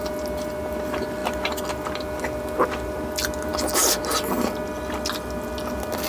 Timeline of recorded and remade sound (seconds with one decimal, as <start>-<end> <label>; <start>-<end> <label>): 0.0-6.1 recorded

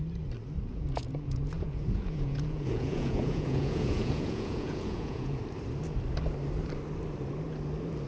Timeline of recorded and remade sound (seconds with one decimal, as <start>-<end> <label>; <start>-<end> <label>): 0.0-0.7 recorded; 0.7-5.4 remade; 5.4-8.1 recorded

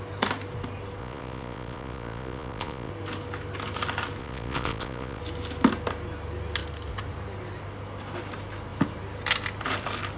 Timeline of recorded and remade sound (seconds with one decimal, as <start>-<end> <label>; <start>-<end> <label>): 0.0-1.0 recorded; 1.0-2.9 remade; 2.9-4.2 recorded; 4.2-5.2 remade; 5.2-10.2 recorded

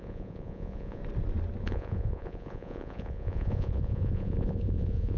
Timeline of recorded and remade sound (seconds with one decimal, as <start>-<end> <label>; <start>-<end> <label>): 0.0-1.0 remade; 1.0-1.6 recorded; 1.6-5.2 remade

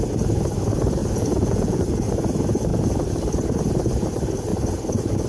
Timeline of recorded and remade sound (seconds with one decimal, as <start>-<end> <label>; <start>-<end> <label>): 0.0-1.0 recorded; 1.0-1.8 remade; 1.8-5.3 recorded

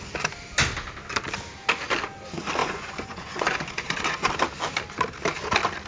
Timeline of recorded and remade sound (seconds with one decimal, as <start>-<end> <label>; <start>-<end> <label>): 0.0-2.6 recorded; 2.6-4.3 remade; 4.3-5.9 recorded